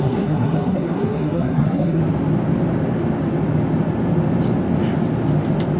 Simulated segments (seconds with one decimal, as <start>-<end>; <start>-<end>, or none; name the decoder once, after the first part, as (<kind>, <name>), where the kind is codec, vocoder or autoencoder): 0.0-2.0 (codec, SNAC)